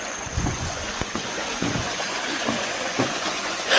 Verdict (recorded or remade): remade